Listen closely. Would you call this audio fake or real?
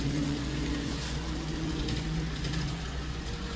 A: fake